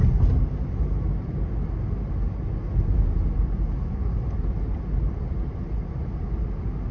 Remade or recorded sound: recorded